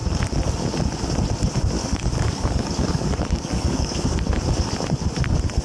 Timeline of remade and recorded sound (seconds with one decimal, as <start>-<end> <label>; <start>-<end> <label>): 0.0-1.8 recorded; 1.8-4.4 remade; 4.4-5.6 recorded